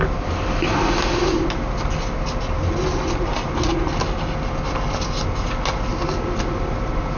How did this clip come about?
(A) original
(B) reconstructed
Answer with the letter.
A